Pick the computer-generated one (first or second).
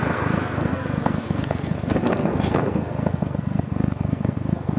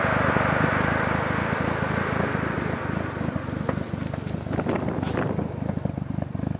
first